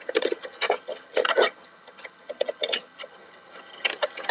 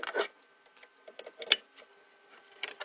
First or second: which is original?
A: second